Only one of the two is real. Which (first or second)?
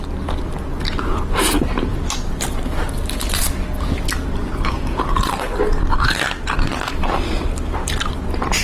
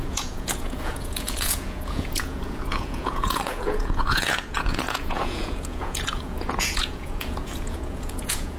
first